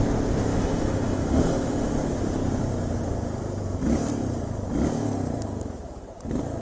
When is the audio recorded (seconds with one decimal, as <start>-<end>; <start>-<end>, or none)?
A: 0.0-0.5; 1.9-6.6